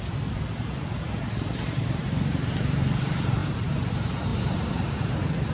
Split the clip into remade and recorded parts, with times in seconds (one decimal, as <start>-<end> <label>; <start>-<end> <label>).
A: 0.0-5.5 remade